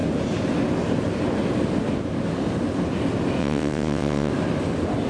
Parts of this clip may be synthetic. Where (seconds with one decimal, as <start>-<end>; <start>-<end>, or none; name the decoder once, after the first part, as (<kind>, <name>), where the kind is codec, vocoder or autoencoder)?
3.4-4.3 (vocoder, WaveNeXt)

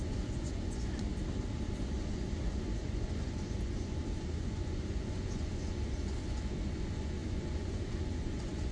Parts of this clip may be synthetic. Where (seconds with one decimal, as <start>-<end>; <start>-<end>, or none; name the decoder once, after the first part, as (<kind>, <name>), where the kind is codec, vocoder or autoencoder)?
0.0-1.1 (vocoder, Vocos); 2.1-8.7

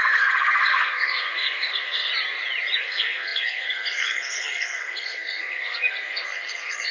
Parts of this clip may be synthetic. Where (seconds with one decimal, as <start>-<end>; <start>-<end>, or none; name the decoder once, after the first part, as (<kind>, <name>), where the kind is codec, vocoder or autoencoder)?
0.0-2.1 (codec, SNAC); 2.8-6.9